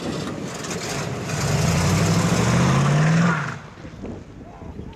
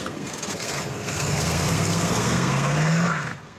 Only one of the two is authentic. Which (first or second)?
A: first